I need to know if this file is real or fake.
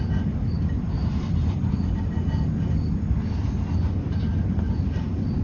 real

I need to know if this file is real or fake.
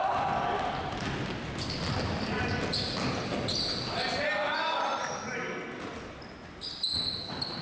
real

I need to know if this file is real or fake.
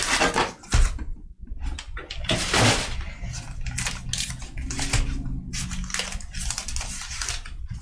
real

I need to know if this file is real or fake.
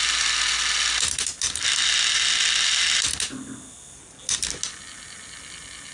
real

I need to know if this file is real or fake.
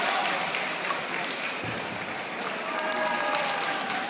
fake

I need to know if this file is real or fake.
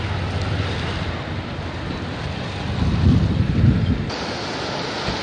real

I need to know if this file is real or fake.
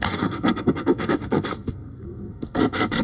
fake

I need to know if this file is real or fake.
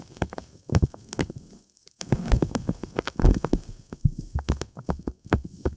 fake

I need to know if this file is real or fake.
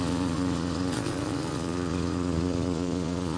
fake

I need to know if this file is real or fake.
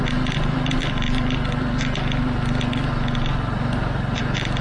real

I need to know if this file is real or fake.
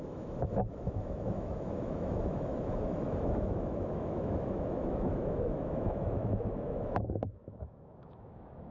fake